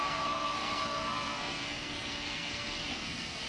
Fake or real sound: fake